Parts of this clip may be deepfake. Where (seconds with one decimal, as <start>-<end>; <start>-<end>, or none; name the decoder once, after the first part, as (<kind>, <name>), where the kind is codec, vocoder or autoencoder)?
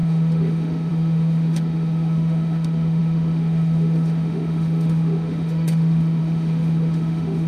0.0-7.5 (autoencoder, DAC-VAE)